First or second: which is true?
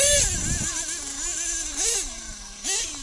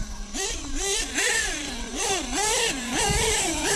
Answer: first